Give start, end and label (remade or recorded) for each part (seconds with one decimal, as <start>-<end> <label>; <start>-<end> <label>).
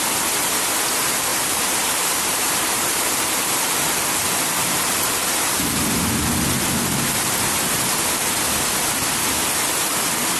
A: 0.0-1.3 recorded; 1.3-3.7 remade; 3.7-4.6 recorded; 4.6-5.5 remade; 5.5-10.4 recorded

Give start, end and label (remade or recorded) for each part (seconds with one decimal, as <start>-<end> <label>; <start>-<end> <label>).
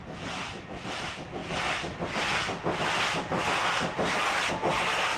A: 0.0-5.2 recorded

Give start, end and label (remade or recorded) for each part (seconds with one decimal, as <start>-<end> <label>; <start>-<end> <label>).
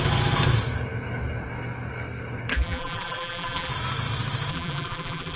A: 0.0-2.5 recorded; 2.5-3.7 remade; 3.7-4.5 recorded; 4.5-5.4 remade